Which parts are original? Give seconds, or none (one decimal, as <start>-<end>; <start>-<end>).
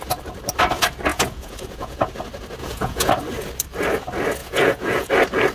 0.0-1.1; 2.1-2.6; 3.1-4.4; 5.1-5.5